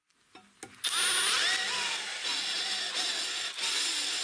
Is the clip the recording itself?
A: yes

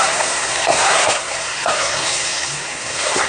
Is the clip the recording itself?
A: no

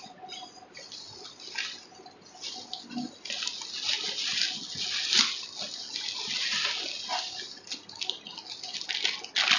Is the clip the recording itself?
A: yes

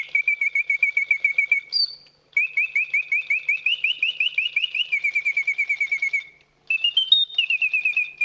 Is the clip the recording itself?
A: yes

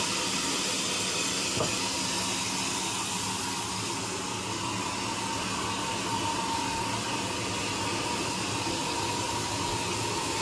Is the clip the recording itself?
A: yes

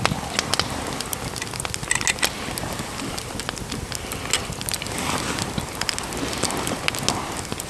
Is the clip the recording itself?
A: yes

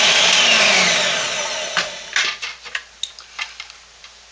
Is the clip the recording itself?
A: yes